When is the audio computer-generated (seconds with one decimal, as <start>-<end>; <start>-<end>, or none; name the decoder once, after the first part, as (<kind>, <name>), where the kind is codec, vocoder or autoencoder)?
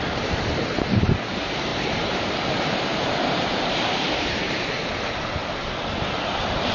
0.0-5.4 (vocoder, BigVGAN v2); 6.1-6.7